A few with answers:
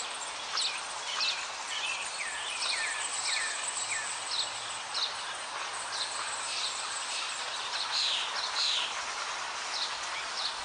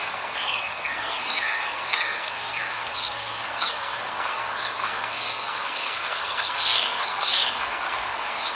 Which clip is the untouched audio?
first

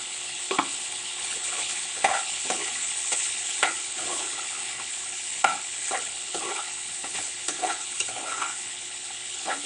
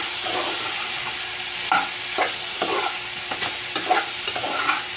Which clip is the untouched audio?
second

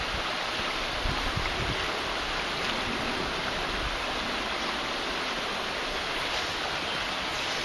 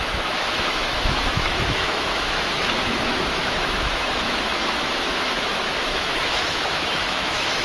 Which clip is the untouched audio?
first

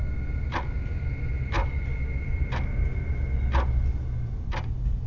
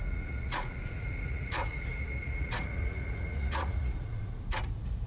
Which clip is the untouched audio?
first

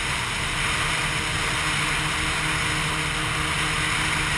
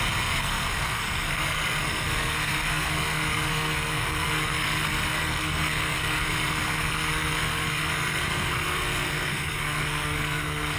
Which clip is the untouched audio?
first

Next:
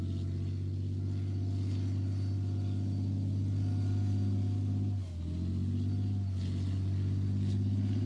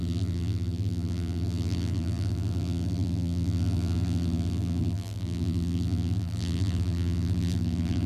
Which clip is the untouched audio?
first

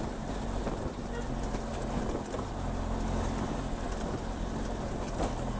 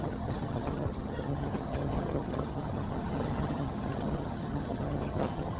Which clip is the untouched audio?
first